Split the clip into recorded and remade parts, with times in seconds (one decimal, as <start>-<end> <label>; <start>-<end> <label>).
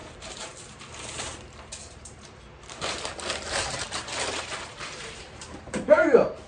0.0-6.5 remade